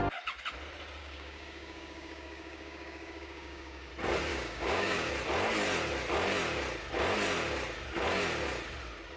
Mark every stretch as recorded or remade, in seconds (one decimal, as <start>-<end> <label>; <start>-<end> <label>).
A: 0.0-1.0 recorded; 1.0-3.9 remade; 3.9-4.3 recorded; 4.3-5.1 remade; 5.1-9.2 recorded